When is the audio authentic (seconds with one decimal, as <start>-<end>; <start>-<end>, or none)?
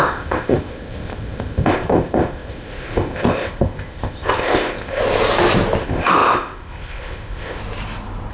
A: 5.0-5.8; 7.6-8.3